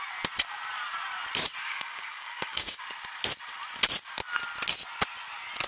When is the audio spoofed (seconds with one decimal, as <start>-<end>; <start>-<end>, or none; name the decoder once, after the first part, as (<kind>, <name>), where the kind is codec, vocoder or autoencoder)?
1.6-2.8 (codec, DAC)